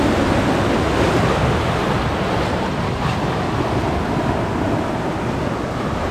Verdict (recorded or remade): recorded